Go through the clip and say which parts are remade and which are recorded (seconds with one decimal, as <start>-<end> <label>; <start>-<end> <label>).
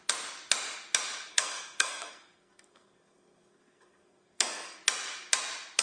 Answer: 0.0-1.3 recorded; 1.3-4.8 remade; 4.8-5.8 recorded